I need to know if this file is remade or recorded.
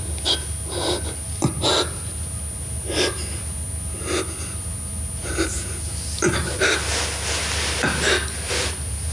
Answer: recorded